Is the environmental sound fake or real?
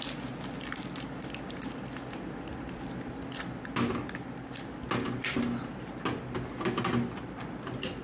real